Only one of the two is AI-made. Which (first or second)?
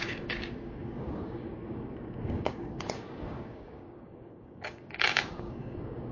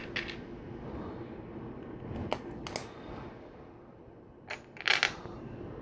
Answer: first